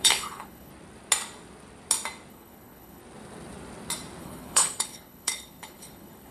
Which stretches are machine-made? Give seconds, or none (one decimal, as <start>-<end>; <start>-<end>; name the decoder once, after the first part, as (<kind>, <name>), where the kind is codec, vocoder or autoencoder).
0.0-0.7 (codec, HILCodec); 2.3-3.0; 4.2-6.3